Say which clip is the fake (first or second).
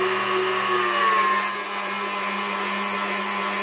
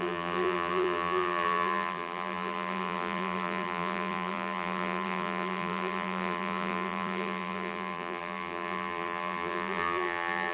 second